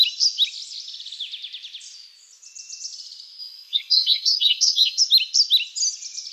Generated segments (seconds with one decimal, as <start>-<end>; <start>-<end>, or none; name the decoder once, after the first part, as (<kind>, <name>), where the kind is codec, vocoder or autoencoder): 3.4-5.0 (codec, SNAC)